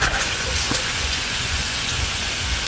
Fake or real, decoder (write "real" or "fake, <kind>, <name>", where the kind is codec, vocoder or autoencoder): fake, vocoder, Vocos